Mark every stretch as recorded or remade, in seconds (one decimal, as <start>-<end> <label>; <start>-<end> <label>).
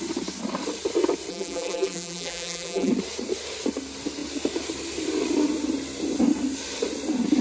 0.0-1.3 recorded; 1.3-2.9 remade; 2.9-7.4 recorded